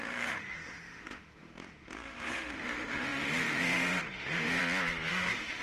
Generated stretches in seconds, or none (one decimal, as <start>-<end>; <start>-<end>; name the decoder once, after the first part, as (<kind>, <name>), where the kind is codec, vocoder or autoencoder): 0.0-4.6 (autoencoder, DAC-VAE); 5.1-5.6